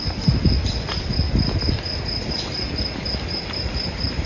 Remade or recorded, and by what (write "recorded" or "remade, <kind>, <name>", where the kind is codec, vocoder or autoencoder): recorded